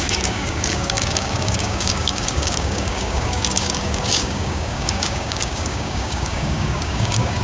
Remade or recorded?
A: remade